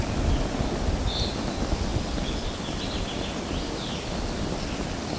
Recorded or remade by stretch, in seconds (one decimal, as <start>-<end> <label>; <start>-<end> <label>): 0.0-5.2 recorded